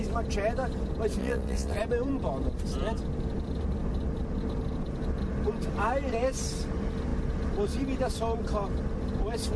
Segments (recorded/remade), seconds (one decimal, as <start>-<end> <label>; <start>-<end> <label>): 0.0-1.2 recorded; 1.2-1.8 remade; 1.8-9.6 recorded